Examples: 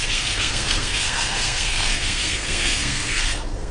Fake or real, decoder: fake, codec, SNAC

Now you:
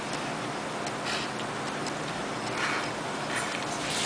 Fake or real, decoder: real